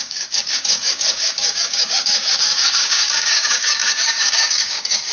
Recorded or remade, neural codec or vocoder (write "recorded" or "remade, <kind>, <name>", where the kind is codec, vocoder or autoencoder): remade, codec, DAC